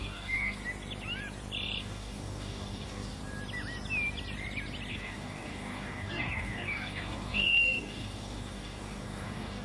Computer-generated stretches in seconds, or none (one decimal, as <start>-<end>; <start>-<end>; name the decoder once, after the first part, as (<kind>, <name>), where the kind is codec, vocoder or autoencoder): 0.0-0.6 (codec, DAC); 1.8-3.2; 4.9-9.6